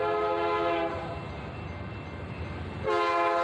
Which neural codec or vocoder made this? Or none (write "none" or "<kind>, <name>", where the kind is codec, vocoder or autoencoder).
none